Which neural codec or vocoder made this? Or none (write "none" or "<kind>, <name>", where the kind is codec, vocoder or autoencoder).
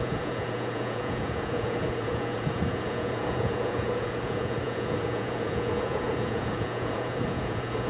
vocoder, Vocos